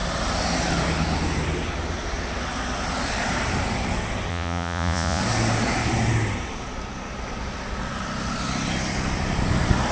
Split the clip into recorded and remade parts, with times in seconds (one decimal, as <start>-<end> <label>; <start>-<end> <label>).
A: 0.0-4.3 recorded; 4.3-5.2 remade; 5.2-9.9 recorded